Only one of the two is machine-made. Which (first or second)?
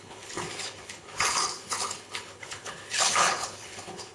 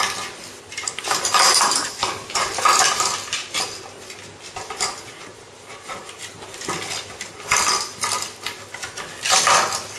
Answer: first